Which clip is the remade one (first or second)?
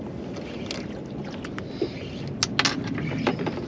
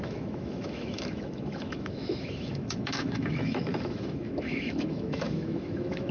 second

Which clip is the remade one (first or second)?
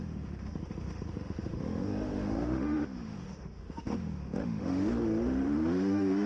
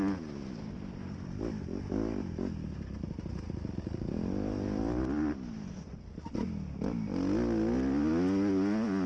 first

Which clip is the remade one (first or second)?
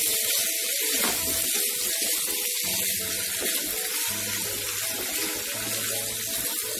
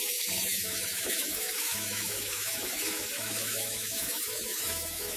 second